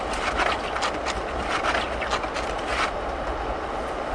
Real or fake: real